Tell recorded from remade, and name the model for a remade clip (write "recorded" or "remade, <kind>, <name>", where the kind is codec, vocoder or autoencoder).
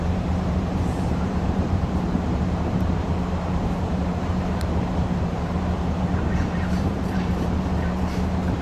remade, vocoder, BigVGAN v2